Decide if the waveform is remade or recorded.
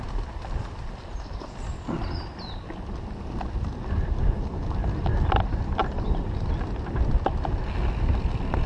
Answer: recorded